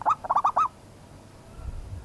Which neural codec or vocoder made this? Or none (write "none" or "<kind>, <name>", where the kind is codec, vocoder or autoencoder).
none